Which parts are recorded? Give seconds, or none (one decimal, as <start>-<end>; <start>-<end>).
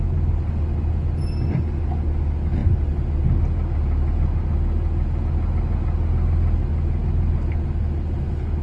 0.0-8.6